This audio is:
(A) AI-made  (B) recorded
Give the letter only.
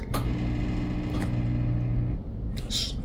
B